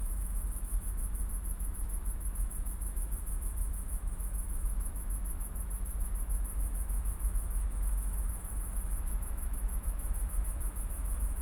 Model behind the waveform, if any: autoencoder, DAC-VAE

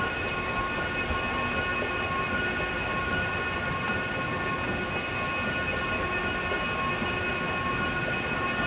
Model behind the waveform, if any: none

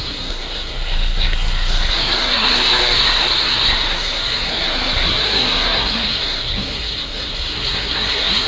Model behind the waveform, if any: codec, SNAC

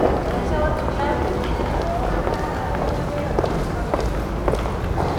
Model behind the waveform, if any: none